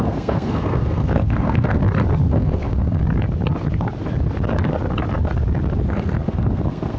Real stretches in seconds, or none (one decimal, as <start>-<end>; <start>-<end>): 1.8-2.3; 3.0-5.9